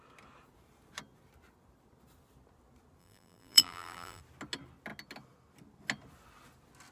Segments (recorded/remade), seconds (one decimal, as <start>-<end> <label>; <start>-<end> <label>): 0.0-3.0 recorded; 3.0-4.2 remade; 4.2-6.9 recorded